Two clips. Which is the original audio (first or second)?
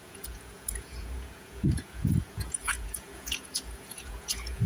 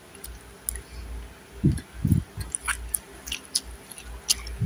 second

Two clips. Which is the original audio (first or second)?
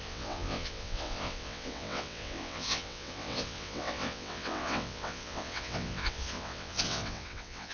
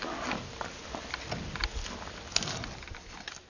second